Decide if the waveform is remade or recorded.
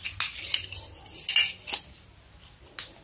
recorded